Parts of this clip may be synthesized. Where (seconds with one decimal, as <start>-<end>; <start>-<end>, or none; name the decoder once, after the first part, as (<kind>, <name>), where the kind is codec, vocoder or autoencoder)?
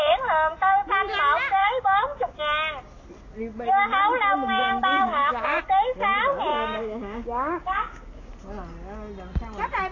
1.6-2.4 (codec, DAC); 4.6-5.6; 6.5-8.3